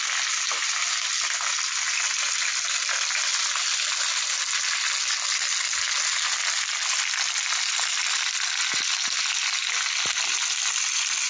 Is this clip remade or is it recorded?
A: recorded